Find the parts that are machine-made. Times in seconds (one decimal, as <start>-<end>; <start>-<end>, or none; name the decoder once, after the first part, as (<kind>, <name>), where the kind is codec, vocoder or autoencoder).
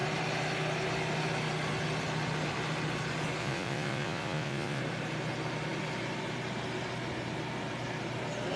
3.4-4.8 (vocoder, Vocos)